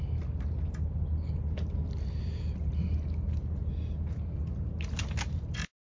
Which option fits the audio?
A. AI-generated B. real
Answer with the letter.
B